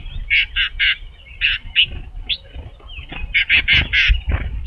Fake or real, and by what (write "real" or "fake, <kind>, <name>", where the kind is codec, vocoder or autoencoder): real